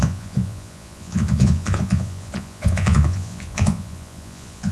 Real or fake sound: fake